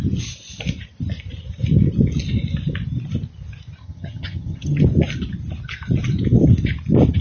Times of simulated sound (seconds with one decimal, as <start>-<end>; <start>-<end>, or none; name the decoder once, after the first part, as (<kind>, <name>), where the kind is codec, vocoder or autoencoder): 3.8-4.8 (vocoder, HiFi-GAN)